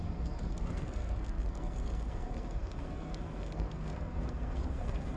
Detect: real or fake fake